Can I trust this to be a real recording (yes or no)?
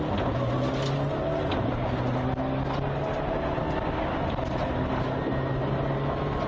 yes